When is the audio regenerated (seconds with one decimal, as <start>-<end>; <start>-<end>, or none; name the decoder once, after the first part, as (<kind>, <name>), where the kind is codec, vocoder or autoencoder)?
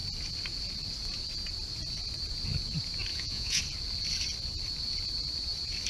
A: 3.1-3.6 (vocoder, Vocos)